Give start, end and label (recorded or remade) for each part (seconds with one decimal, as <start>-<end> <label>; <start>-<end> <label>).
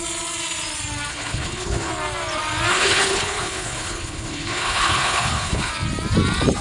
0.0-1.1 recorded; 1.1-1.9 remade; 1.9-2.7 recorded; 2.7-5.7 remade; 5.7-6.6 recorded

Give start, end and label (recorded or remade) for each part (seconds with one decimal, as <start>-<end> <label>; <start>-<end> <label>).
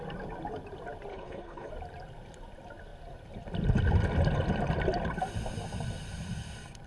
0.0-1.1 recorded; 1.1-1.7 remade; 1.7-6.9 recorded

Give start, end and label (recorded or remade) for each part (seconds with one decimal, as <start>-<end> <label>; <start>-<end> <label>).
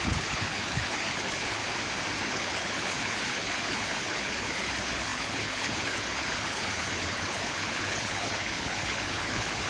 0.0-1.6 remade; 1.6-2.2 recorded; 2.2-9.7 remade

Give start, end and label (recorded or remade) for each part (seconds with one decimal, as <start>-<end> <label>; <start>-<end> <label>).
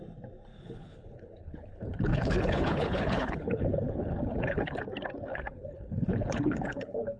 0.0-0.5 recorded; 0.5-4.8 remade; 4.8-5.3 recorded; 5.3-7.2 remade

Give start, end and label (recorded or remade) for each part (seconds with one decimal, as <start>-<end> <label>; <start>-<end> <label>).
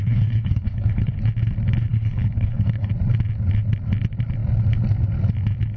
0.0-1.2 remade; 1.2-1.9 recorded; 1.9-2.9 remade; 2.9-5.8 recorded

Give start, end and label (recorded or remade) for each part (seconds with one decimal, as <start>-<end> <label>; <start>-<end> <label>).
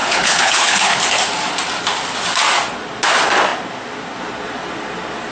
0.0-1.0 remade; 1.0-5.3 recorded